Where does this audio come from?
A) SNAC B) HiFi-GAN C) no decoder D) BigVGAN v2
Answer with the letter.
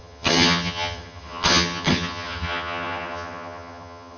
B